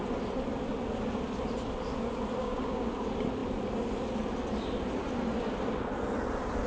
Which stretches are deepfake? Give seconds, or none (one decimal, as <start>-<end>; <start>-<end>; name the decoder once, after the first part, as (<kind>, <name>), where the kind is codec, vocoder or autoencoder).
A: 2.4-2.9 (codec, DAC)